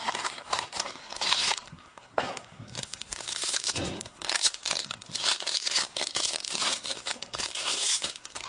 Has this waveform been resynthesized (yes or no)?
yes